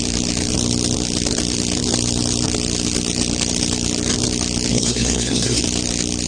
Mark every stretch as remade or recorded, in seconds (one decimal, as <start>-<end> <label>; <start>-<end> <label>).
0.0-4.7 recorded; 4.7-5.6 remade; 5.6-6.3 recorded